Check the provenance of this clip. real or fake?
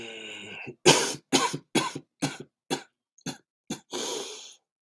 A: real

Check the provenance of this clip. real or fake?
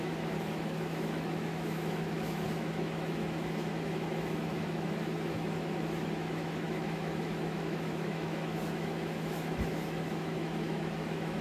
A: fake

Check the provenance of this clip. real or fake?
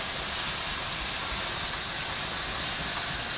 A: real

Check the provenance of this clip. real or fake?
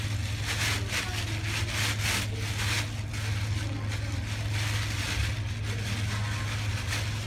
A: real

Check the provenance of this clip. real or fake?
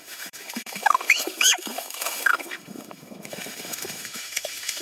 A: fake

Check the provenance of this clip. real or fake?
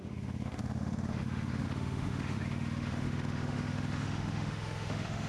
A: fake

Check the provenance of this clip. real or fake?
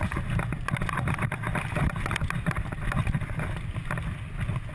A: real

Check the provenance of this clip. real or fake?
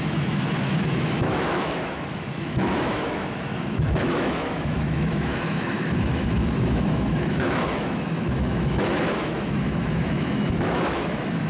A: fake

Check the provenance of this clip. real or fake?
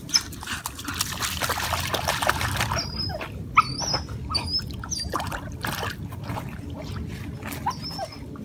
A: real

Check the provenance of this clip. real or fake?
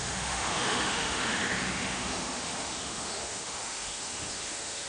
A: fake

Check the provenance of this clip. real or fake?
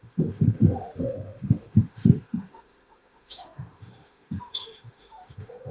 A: fake